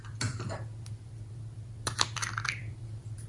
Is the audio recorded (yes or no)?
no